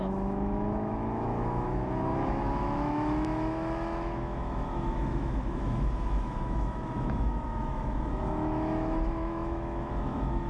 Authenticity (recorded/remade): remade